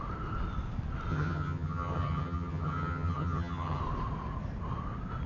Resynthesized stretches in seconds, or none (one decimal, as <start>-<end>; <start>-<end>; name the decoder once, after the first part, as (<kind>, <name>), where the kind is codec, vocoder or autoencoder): 1.1-3.8 (vocoder, HiFi-GAN)